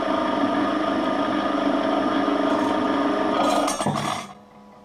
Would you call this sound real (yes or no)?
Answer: yes